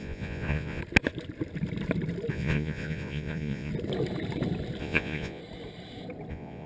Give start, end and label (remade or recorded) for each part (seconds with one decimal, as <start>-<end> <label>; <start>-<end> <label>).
0.0-0.8 remade; 0.8-2.3 recorded; 2.3-3.7 remade; 3.7-4.8 recorded; 4.8-5.4 remade; 5.4-6.3 recorded; 6.3-6.7 remade